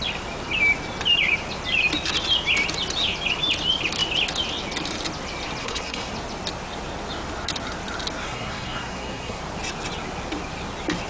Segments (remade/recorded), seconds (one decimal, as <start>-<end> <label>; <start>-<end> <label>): 0.0-5.6 recorded; 5.6-6.1 remade; 6.1-8.2 recorded; 8.2-9.4 remade; 9.4-11.1 recorded